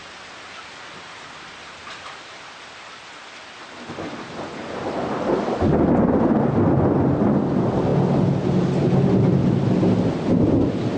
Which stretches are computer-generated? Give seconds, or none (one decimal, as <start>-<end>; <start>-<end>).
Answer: none